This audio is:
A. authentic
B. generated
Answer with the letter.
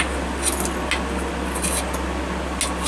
A